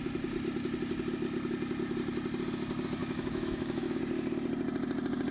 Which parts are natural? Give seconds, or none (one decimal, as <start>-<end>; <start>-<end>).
0.0-3.0; 4.0-5.3